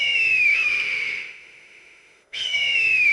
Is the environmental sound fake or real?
fake